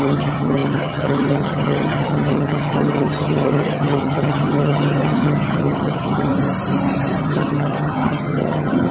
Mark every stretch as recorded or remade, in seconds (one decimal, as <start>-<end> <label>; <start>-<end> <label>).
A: 0.0-6.3 remade; 6.3-7.2 recorded; 7.2-8.9 remade